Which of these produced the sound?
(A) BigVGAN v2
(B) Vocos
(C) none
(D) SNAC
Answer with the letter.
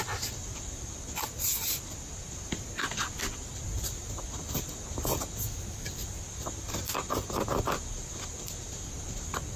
C